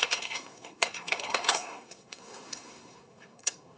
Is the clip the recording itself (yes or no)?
no